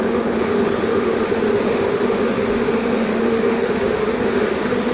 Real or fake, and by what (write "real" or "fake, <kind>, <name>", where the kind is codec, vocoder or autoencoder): fake, autoencoder, DAC-VAE